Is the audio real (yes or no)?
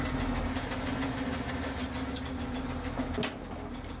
yes